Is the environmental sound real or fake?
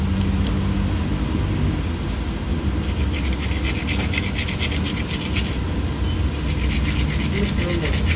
real